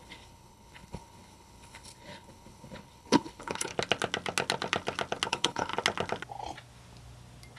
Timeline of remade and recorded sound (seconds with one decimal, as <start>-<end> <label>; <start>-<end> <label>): 0.0-3.7 remade; 3.7-5.3 recorded; 5.3-5.7 remade; 5.7-7.6 recorded